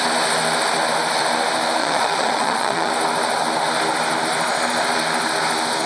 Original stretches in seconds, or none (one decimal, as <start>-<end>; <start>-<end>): 0.0-1.8; 2.9-5.9